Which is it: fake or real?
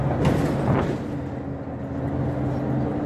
real